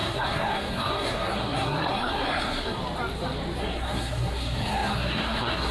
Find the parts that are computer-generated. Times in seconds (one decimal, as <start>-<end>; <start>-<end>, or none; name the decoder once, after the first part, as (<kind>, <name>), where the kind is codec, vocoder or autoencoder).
0.0-2.8 (codec, SNAC); 3.6-5.7